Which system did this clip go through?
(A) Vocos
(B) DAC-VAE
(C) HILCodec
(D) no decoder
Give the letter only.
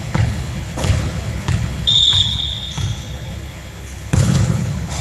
C